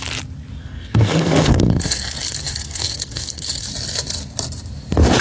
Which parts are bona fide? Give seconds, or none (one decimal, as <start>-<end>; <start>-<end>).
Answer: 0.0-0.6; 3.7-5.2